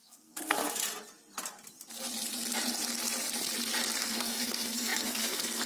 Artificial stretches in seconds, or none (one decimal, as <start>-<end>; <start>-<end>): 0.0-0.6; 4.0-5.7